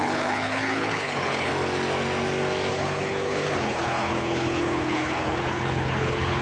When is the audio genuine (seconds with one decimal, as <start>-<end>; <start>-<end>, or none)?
1.5-2.7